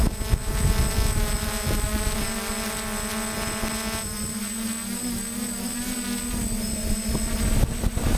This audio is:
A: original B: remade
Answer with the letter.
A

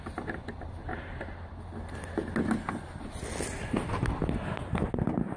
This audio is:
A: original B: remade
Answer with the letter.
A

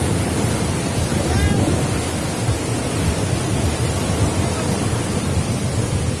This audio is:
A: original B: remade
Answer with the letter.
A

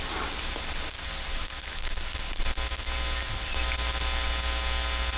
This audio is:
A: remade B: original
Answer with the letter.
B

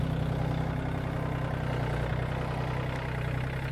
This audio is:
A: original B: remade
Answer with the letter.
A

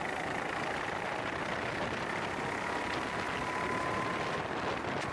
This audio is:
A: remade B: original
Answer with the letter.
B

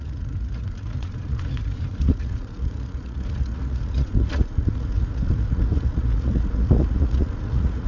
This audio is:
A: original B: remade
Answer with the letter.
B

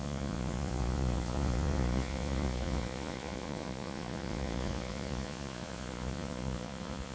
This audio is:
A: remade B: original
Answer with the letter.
A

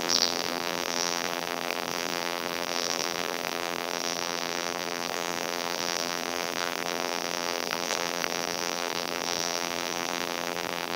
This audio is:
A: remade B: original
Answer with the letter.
A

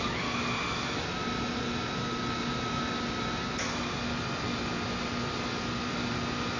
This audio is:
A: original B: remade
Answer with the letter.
A